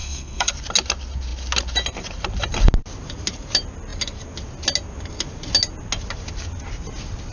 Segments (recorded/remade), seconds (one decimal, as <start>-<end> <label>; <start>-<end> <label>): 0.0-0.5 remade; 0.5-7.3 recorded